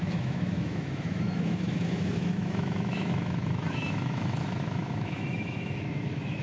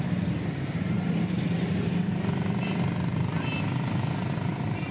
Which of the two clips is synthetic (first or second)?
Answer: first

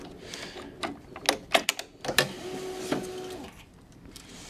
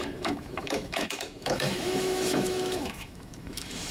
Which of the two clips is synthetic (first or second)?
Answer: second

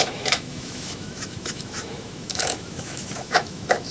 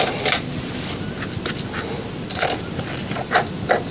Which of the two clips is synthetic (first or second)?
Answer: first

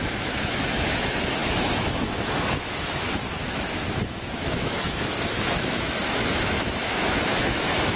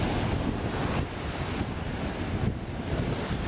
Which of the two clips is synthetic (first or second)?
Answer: first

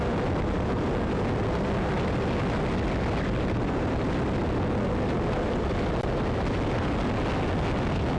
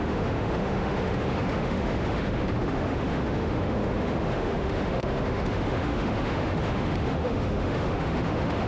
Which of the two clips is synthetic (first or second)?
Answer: second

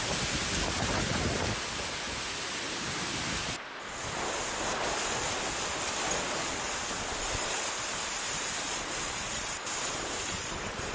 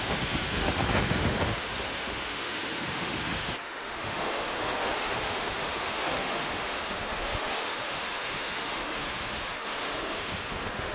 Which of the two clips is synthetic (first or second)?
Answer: second